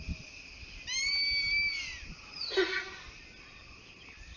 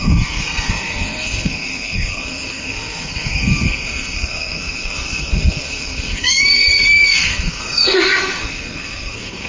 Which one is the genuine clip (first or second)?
first